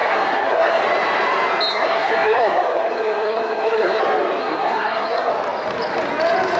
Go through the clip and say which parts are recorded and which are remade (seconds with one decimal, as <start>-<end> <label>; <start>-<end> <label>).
0.0-0.8 remade; 0.8-1.7 recorded; 1.7-4.0 remade; 4.0-4.4 recorded; 4.4-5.3 remade; 5.3-6.6 recorded